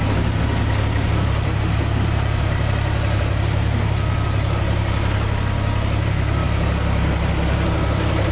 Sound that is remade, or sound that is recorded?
recorded